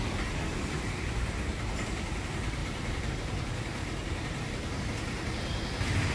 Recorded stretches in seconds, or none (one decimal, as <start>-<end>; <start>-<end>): 0.0-0.5; 1.3-2.6; 3.1-3.8; 4.8-6.1